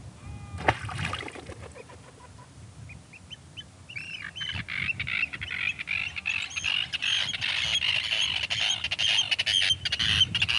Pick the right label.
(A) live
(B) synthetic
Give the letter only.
A